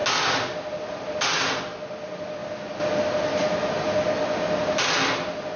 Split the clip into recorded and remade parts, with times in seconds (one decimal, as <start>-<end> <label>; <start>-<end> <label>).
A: 0.0-5.6 recorded